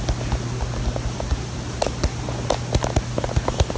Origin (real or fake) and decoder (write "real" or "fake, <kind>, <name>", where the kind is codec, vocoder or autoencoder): real